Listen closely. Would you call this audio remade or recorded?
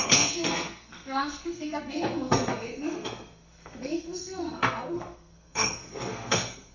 remade